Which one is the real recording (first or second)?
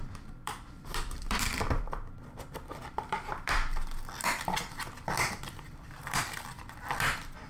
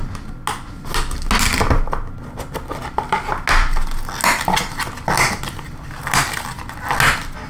second